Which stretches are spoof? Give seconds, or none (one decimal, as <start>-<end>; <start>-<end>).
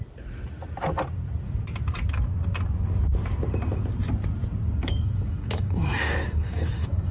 4.8-7.1